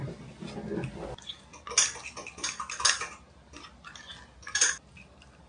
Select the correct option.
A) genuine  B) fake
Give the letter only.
A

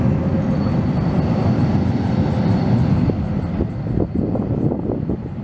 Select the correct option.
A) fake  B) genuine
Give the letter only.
B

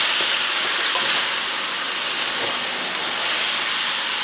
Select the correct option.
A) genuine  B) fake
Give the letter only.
A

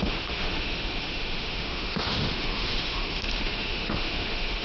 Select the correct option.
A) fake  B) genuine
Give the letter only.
A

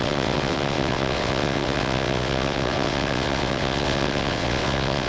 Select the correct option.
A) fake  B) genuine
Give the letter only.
A